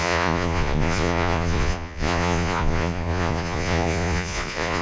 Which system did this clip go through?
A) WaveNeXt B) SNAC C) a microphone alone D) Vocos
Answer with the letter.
D